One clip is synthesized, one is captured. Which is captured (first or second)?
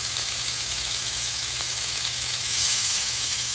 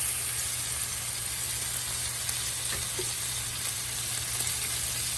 second